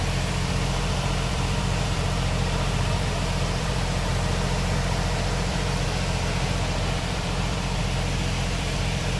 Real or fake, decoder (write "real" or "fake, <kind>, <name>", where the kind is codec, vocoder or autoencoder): fake, vocoder, BigVGAN v2